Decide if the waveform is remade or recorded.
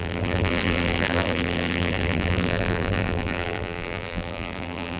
remade